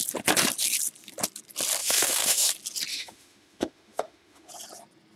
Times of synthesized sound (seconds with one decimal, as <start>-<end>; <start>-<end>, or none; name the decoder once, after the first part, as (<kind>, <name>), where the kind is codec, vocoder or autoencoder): 1.8-2.5 (autoencoder, DAC-VAE); 2.9-4.5